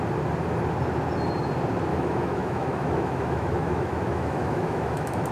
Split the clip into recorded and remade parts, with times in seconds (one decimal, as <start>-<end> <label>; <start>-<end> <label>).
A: 0.0-1.9 recorded; 1.9-5.3 remade

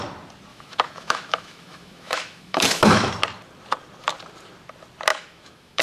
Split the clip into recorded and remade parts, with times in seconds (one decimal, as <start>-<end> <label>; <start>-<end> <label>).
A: 0.0-0.5 recorded; 0.5-3.1 remade; 3.1-5.1 recorded; 5.1-5.8 remade

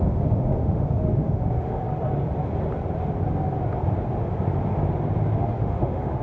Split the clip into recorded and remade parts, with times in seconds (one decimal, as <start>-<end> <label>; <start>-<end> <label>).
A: 0.0-1.8 remade; 1.8-5.4 recorded; 5.4-6.2 remade

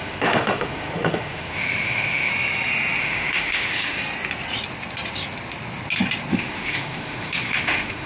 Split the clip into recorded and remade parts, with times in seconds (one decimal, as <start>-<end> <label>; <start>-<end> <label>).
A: 0.0-2.3 remade; 2.3-3.0 recorded; 3.0-4.0 remade; 4.0-6.3 recorded; 6.3-8.1 remade

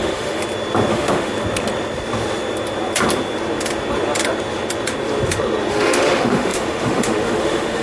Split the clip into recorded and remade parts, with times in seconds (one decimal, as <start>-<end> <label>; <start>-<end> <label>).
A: 0.0-0.4 remade; 0.4-0.9 recorded; 0.9-1.3 remade; 1.3-5.7 recorded; 5.7-7.8 remade

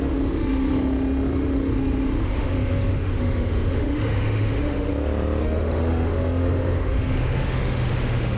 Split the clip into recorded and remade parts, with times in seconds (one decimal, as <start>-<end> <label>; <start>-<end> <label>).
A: 0.0-4.9 remade; 4.9-5.4 recorded; 5.4-8.4 remade

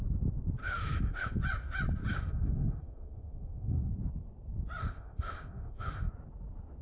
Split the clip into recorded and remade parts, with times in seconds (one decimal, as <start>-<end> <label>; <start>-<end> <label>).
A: 0.0-0.6 recorded; 0.6-1.3 remade; 1.3-2.1 recorded; 2.1-3.9 remade; 3.9-4.8 recorded; 4.8-6.1 remade; 6.1-6.8 recorded

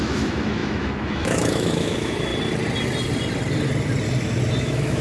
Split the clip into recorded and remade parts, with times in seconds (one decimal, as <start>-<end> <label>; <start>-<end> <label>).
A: 0.0-2.3 remade; 2.3-4.6 recorded; 4.6-5.0 remade